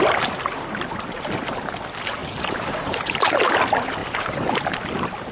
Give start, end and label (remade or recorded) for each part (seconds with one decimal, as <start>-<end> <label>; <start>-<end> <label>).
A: 0.0-2.2 recorded; 2.2-3.5 remade; 3.5-4.0 recorded; 4.0-4.5 remade; 4.5-5.3 recorded